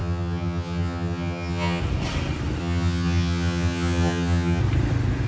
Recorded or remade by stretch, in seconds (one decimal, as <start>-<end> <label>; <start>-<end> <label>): 0.0-1.8 remade; 1.8-2.6 recorded; 2.6-4.6 remade; 4.6-5.3 recorded

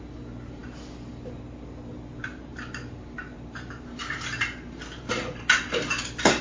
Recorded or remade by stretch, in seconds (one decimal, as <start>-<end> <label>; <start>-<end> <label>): 0.0-1.9 recorded; 1.9-5.2 remade; 5.2-6.4 recorded

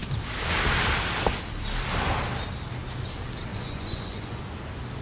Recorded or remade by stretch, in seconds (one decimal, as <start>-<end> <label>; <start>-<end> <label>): 0.0-3.5 recorded; 3.5-4.4 remade; 4.4-5.0 recorded

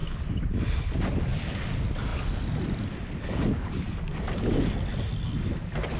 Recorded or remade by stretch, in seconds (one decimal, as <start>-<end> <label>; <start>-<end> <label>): 0.0-6.0 recorded

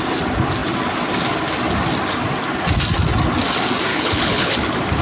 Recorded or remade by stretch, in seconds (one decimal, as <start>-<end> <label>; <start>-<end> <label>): 0.0-3.9 recorded; 3.9-4.5 remade; 4.5-5.0 recorded